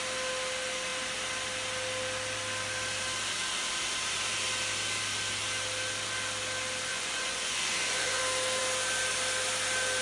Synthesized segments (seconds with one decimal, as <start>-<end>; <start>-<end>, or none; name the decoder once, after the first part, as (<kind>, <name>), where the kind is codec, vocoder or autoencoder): 6.9-8.2 (vocoder, Vocos)